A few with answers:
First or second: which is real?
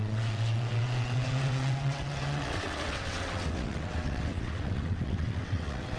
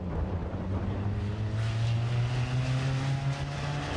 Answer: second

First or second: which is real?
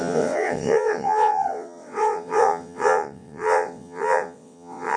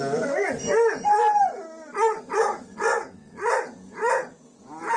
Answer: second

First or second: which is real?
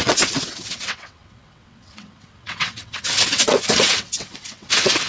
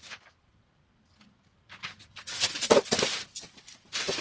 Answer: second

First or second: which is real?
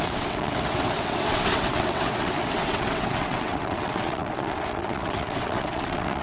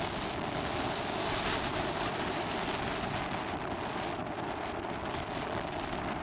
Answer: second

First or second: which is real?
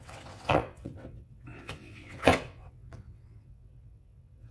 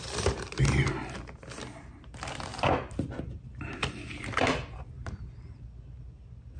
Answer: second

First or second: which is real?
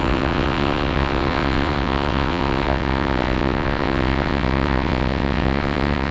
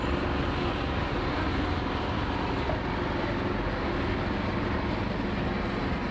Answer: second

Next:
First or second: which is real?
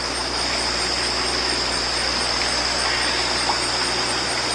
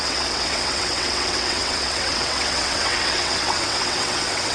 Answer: first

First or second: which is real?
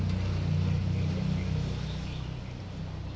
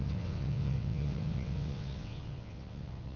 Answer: first